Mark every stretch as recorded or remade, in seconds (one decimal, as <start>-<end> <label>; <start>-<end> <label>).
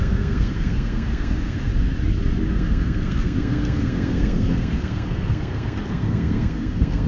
0.0-1.7 remade; 1.7-2.5 recorded; 2.5-7.1 remade